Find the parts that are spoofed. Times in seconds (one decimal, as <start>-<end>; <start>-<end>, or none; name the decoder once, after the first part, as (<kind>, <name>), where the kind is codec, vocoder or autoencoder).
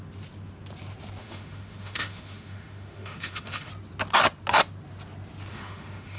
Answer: 1.2-3.7 (autoencoder, DAC-VAE); 5.5-6.2